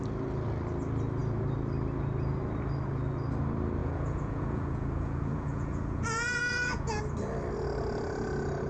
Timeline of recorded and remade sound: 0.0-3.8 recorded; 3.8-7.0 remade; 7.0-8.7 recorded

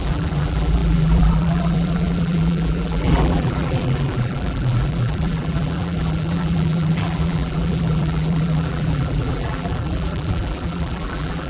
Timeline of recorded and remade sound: 0.0-11.5 remade

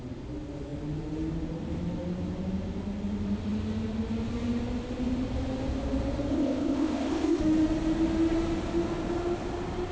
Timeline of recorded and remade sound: 0.0-6.3 recorded; 6.3-7.4 remade; 7.4-9.9 recorded

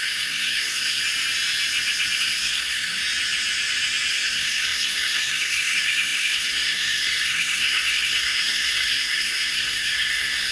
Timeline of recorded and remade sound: 0.0-1.0 remade; 1.0-2.2 recorded; 2.2-3.0 remade; 3.0-4.1 recorded; 4.1-10.5 remade

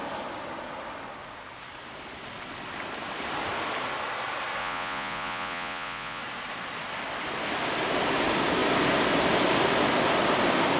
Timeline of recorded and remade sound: 0.0-4.6 recorded; 4.6-6.2 remade; 6.2-10.8 recorded

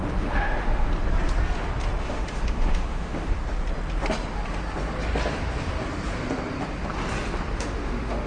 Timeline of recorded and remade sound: 0.0-0.9 remade; 0.9-2.0 recorded; 2.0-3.4 remade; 3.4-7.6 recorded; 7.6-8.3 remade

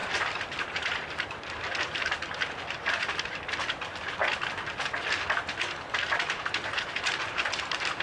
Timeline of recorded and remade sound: 0.0-4.2 remade; 4.2-6.1 recorded; 6.1-8.0 remade